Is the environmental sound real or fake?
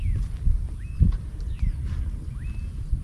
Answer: real